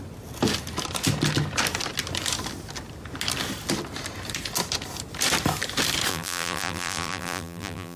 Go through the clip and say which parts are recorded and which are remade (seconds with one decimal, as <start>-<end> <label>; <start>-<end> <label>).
0.0-6.1 recorded; 6.1-8.0 remade